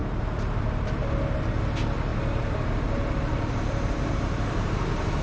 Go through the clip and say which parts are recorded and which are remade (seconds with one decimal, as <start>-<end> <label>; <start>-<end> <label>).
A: 0.0-0.9 remade; 0.9-2.1 recorded; 2.1-4.8 remade; 4.8-5.2 recorded